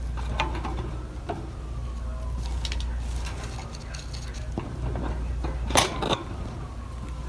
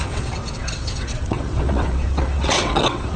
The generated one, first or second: second